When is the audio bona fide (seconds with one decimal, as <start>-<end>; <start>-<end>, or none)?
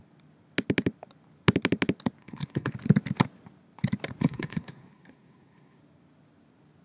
0.0-2.2; 2.7-4.2; 5.8-6.8